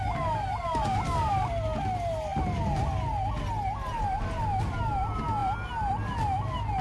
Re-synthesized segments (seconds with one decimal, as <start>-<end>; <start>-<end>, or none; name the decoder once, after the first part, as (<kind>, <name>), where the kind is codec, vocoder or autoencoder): none